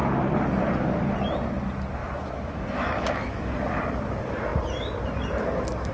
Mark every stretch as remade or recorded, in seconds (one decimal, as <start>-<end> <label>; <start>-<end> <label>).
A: 0.0-2.0 recorded; 2.0-3.5 remade; 3.5-5.9 recorded